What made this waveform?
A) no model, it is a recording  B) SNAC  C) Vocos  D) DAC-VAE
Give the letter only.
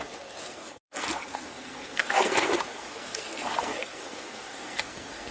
B